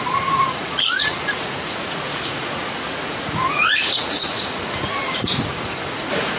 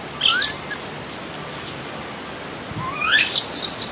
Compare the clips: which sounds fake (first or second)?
first